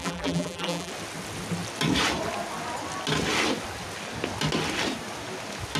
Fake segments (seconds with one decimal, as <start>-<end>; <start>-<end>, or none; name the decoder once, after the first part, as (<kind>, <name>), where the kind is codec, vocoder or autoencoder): 0.0-0.9 (vocoder, BigVGAN v2)